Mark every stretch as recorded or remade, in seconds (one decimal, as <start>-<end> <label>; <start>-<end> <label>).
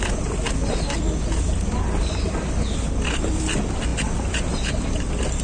0.0-5.4 recorded